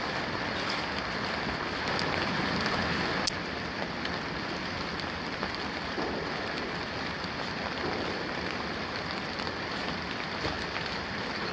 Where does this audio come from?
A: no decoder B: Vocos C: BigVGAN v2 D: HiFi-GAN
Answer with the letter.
A